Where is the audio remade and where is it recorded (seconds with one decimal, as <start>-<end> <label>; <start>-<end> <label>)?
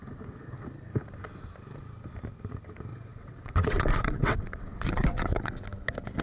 0.0-2.9 recorded; 2.9-5.5 remade; 5.5-6.2 recorded